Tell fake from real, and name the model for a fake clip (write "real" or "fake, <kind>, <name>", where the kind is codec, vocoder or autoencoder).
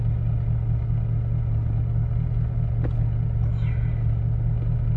real